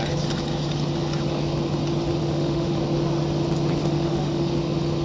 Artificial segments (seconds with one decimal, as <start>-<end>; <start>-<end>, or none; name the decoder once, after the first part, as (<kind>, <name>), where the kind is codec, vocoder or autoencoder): 2.2-2.8 (autoencoder, DAC-VAE); 3.8-4.5